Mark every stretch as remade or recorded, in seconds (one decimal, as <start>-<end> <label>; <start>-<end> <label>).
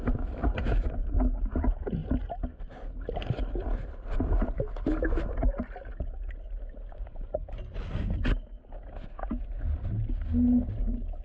0.0-11.2 recorded